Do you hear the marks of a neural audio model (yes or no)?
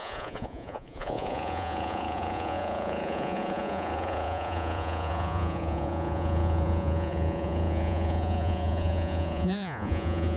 yes